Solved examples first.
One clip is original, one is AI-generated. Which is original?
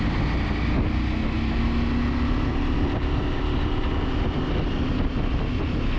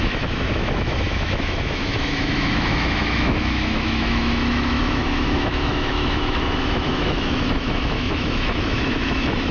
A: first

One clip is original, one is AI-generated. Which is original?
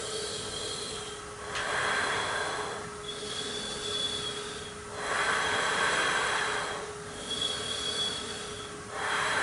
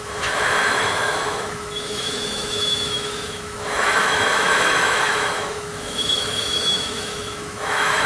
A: first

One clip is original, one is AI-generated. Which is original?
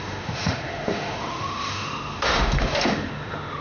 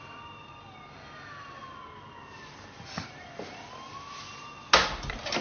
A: second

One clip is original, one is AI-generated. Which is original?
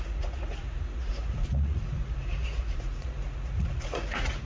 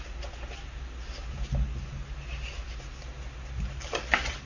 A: second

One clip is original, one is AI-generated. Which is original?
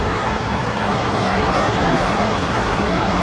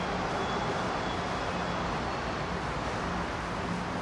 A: second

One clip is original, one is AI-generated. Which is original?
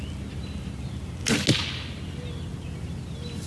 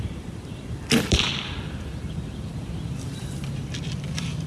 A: first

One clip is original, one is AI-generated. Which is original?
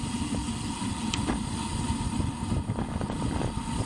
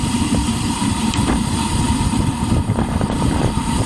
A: first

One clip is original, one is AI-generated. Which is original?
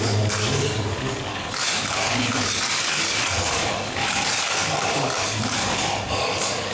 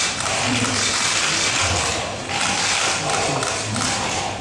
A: second